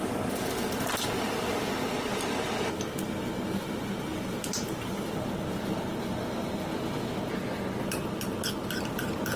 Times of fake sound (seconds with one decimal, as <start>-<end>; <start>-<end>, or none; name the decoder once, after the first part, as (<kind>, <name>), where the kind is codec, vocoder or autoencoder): 4.1-6.5 (vocoder, BigVGAN v2)